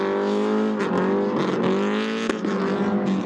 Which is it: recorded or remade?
recorded